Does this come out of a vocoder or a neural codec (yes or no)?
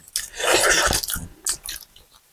no